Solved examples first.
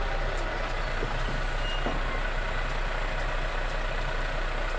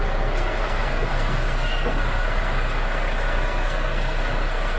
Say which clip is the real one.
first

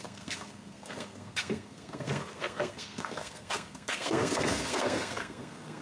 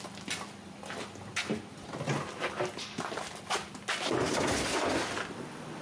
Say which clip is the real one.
second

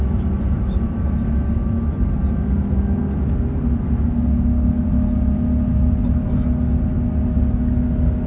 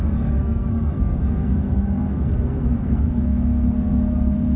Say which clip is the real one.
first